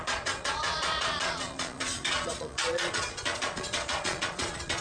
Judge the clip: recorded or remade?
remade